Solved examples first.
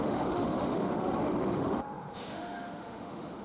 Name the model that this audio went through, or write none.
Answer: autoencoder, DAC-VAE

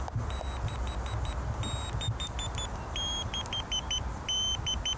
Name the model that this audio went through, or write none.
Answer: none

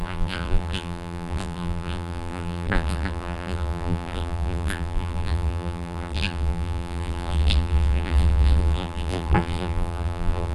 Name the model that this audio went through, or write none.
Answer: vocoder, BigVGAN v2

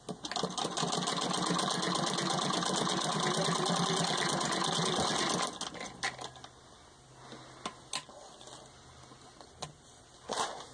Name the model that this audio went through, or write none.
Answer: none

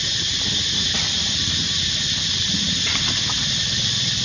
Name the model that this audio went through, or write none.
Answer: vocoder, BigVGAN v2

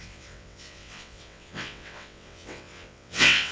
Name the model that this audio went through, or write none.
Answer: vocoder, WaveNeXt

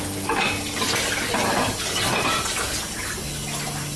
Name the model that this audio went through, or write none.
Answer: none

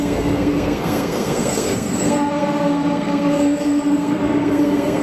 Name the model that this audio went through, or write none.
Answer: codec, SNAC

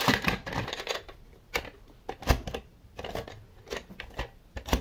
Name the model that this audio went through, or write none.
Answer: none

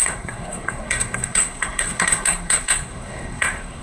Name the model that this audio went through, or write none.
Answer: codec, SNAC